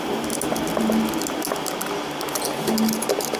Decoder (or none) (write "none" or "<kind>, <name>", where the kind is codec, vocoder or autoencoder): none